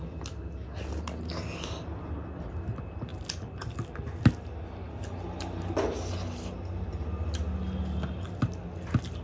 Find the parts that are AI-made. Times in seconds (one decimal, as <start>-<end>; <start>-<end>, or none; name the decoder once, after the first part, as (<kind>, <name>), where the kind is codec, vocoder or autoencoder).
none